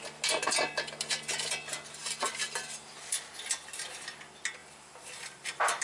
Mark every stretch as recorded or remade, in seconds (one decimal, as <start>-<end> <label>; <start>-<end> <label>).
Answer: 0.0-2.0 recorded; 2.0-3.2 remade; 3.2-4.6 recorded; 4.6-5.8 remade